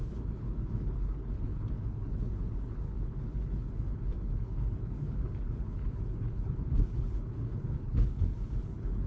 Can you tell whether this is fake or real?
fake